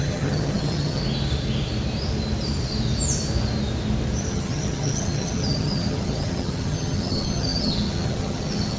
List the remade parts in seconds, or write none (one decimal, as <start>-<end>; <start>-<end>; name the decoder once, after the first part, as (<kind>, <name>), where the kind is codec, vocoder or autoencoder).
0.0-1.0 (vocoder, HiFi-GAN); 4.3-8.8

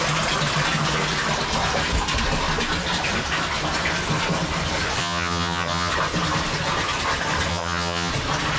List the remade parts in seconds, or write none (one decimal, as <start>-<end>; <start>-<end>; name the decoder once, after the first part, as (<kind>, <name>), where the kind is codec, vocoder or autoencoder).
5.0-5.9 (vocoder, HiFi-GAN); 7.5-8.1